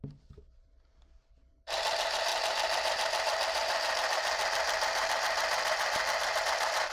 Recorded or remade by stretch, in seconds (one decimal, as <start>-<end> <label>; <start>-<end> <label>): 0.0-2.3 remade; 2.3-6.4 recorded; 6.4-6.9 remade